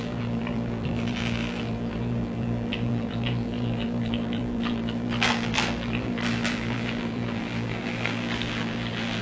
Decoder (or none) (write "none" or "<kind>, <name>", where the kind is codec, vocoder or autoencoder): vocoder, BigVGAN v2